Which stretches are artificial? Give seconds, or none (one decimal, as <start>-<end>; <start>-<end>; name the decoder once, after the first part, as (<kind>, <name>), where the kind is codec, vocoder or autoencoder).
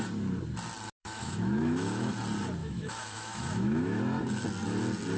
1.0-2.1 (autoencoder, DAC-VAE); 2.6-4.0